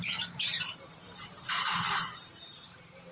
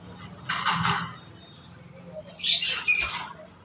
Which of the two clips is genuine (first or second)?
second